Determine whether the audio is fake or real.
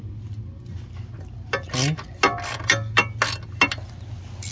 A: real